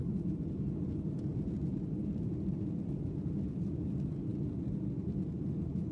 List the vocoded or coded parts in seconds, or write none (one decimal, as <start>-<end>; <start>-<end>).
none